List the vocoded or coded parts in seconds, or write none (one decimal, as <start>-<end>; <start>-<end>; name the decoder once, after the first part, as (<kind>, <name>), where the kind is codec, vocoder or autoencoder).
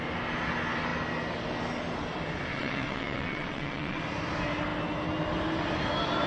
2.5-4.0 (vocoder, WaveNeXt)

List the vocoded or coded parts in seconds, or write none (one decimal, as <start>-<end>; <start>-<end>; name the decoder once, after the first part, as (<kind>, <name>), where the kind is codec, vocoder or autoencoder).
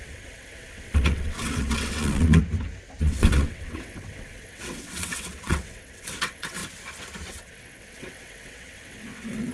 0.0-2.4 (vocoder, WaveNeXt); 3.0-6.6; 7.3-9.5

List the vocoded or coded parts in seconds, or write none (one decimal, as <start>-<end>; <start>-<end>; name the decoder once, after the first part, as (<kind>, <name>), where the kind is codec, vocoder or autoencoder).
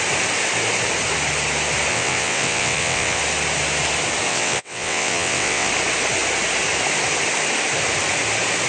1.9-3.2 (vocoder, WaveNeXt); 4.3-5.7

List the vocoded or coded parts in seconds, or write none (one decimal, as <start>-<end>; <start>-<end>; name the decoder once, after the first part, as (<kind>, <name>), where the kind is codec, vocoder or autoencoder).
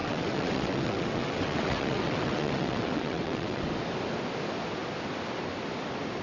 0.0-3.6 (vocoder, WaveNeXt)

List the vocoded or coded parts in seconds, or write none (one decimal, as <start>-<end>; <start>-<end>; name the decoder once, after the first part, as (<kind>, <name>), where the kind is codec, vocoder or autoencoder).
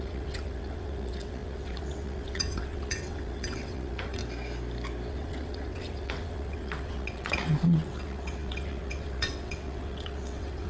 0.0-4.2 (vocoder, WaveNeXt); 5.1-10.7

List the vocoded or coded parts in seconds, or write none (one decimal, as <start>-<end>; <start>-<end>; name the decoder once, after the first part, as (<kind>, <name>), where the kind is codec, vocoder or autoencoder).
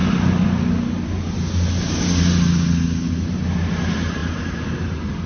none